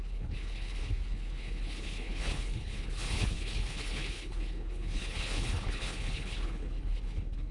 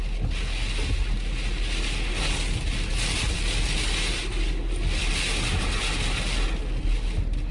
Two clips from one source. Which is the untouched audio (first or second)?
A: second